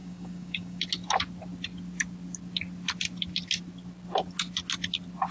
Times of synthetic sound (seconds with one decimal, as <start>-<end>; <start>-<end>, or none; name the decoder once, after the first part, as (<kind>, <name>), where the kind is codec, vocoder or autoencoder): 0.0-0.8 (codec, DAC)